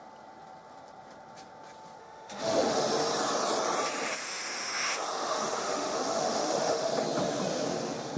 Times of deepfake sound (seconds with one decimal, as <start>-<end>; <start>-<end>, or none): 2.0-2.8; 4.2-6.9